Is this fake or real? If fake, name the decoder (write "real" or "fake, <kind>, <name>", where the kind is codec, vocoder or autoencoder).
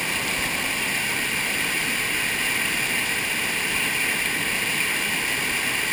real